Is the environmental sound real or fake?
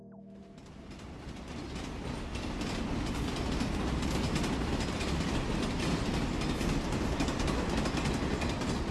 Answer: real